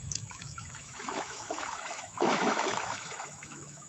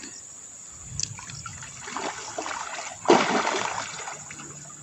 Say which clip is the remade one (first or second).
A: first